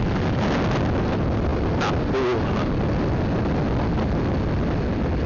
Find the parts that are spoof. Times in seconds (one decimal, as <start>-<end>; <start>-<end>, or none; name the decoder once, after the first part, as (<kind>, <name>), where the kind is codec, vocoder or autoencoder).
none